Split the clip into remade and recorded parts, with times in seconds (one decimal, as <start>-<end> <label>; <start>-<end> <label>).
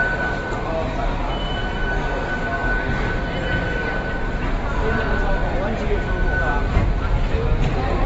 0.0-8.1 recorded